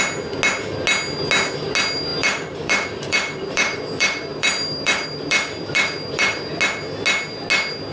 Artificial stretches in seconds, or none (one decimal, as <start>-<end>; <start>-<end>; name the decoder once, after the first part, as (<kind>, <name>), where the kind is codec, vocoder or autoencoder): 2.1-6.6 (vocoder, BigVGAN v2)

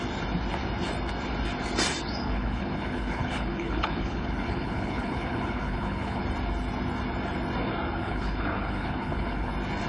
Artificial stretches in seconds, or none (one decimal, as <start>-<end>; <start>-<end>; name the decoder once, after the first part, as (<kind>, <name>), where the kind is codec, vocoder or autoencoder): 2.2-6.2 (codec, HILCodec); 8.0-9.5